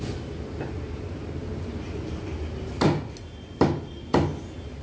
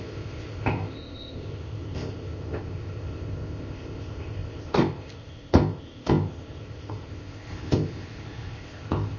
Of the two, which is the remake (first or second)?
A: second